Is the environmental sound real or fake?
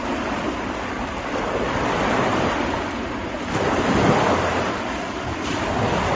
real